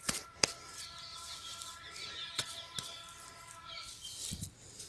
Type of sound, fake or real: real